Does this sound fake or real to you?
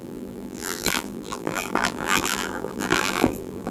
fake